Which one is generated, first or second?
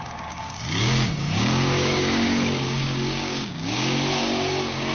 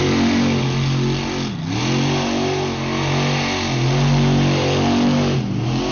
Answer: first